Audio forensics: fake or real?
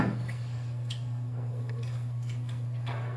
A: fake